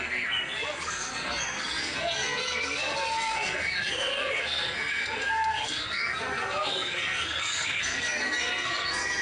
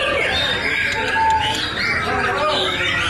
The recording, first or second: second